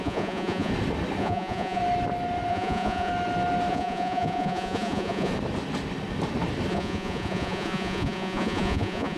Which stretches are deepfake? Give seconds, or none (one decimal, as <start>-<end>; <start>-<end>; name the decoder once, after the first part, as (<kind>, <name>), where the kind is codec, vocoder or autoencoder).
0.0-0.7 (vocoder, Vocos); 1.2-1.8; 2.5-3.1; 3.7-5.3; 6.7-9.2

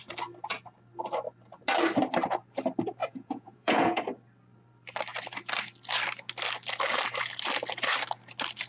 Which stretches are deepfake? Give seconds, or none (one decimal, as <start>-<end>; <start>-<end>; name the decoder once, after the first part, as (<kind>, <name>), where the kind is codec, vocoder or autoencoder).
3.0-4.0 (vocoder, Vocos)

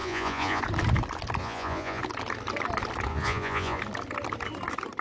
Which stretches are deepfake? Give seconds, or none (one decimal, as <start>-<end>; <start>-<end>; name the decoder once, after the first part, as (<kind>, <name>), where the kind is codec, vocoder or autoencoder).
0.0-0.6 (vocoder, Vocos); 1.4-2.0; 3.1-3.8

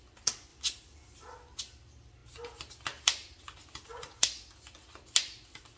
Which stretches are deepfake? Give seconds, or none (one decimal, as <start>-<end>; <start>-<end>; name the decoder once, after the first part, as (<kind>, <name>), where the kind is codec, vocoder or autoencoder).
0.5-1.6 (vocoder, BigVGAN v2)

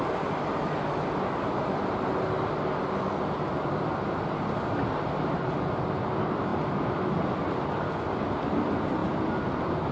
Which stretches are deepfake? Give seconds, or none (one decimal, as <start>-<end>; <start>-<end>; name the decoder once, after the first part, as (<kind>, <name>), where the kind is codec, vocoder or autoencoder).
none